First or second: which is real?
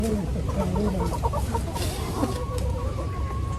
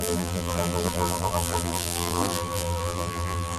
first